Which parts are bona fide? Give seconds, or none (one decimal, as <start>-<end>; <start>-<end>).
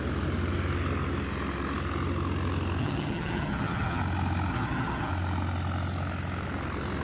0.0-2.8; 4.0-4.5; 5.1-7.0